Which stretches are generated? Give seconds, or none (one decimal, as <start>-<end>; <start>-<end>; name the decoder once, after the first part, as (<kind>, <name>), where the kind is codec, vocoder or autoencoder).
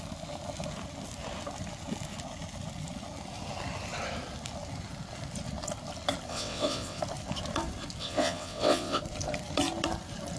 6.3-7.0 (vocoder, WaveNeXt); 8.0-9.0